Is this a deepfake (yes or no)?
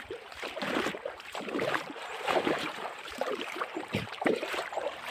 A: yes